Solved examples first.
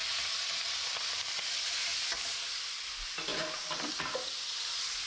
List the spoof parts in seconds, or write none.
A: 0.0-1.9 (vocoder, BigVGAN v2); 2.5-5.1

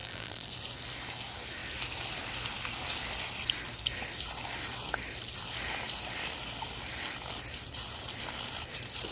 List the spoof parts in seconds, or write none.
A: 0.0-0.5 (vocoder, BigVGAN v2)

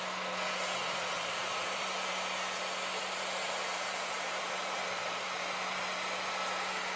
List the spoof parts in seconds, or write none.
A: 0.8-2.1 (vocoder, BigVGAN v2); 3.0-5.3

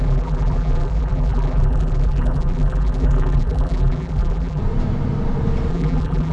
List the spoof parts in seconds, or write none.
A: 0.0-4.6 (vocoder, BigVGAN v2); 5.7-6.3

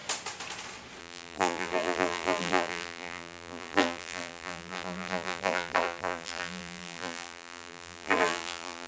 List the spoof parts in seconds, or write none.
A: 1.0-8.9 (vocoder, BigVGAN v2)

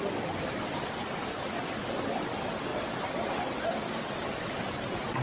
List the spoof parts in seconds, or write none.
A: 1.0-1.9 (vocoder, BigVGAN v2)

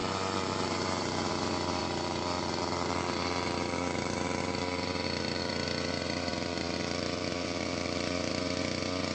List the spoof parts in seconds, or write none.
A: 0.0-1.3 (vocoder, BigVGAN v2); 1.8-5.5; 6.3-8.3